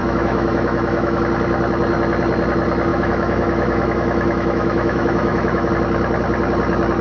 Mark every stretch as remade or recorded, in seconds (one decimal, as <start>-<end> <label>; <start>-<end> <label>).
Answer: 0.0-1.2 remade; 1.2-2.9 recorded; 2.9-5.7 remade; 5.7-7.0 recorded